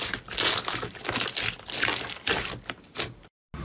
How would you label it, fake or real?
real